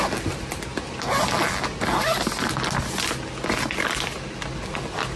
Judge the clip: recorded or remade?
recorded